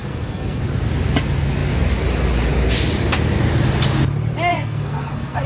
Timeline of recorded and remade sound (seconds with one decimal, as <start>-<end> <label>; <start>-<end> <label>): 0.0-0.6 remade; 0.6-4.5 recorded; 4.5-5.5 remade